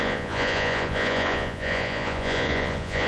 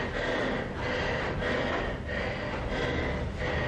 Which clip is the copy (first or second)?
first